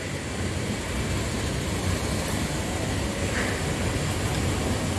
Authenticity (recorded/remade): recorded